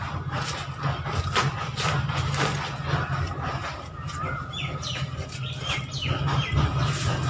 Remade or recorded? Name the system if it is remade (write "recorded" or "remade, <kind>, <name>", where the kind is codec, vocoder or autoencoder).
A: recorded